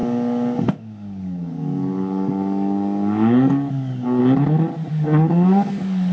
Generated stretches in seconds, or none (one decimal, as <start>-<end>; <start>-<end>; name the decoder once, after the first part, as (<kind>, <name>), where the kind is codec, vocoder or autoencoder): 0.0-4.2 (codec, DAC); 4.9-6.1